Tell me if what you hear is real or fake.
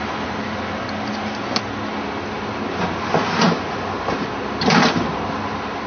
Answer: real